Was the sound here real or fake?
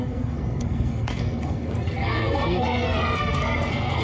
fake